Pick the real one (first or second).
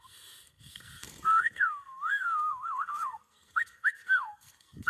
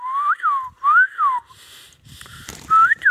second